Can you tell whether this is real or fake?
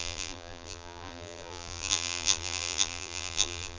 fake